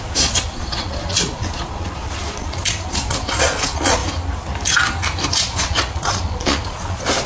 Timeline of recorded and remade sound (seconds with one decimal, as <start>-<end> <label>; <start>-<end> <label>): 0.0-4.0 remade; 4.0-5.3 recorded; 5.3-7.3 remade